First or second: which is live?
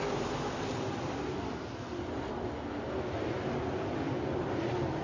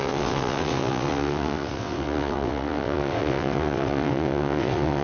first